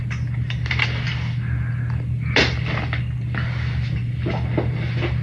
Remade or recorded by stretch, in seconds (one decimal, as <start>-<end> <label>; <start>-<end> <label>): 0.0-5.2 recorded

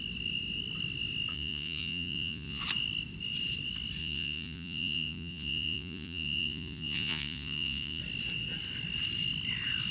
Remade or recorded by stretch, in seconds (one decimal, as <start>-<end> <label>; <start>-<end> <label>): 0.0-1.3 recorded; 1.3-2.6 remade; 2.6-4.0 recorded; 4.0-8.0 remade; 8.0-9.9 recorded

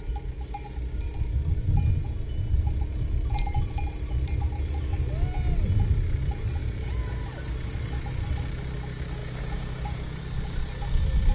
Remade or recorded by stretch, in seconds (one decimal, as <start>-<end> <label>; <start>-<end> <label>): 0.0-2.0 recorded; 2.0-2.6 remade; 2.6-6.6 recorded; 6.6-7.2 remade; 7.2-9.2 recorded; 9.2-10.2 remade; 10.2-11.3 recorded

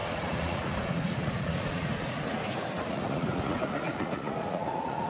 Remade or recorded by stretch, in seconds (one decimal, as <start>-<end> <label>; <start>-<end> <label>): 0.0-5.1 remade

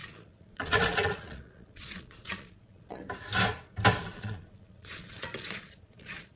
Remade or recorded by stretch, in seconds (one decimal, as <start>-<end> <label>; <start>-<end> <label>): 0.0-3.0 remade; 3.0-4.0 recorded; 4.0-6.4 remade

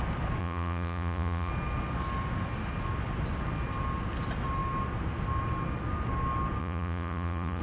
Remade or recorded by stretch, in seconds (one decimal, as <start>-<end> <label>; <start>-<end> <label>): 0.0-0.4 recorded; 0.4-1.5 remade; 1.5-6.6 recorded; 6.6-7.6 remade

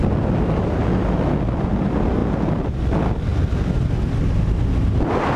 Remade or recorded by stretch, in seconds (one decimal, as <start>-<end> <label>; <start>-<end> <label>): 0.0-5.4 recorded